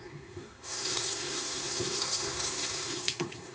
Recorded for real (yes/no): no